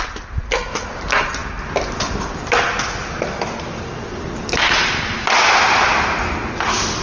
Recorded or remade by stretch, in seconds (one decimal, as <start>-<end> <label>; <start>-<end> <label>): 0.0-7.0 recorded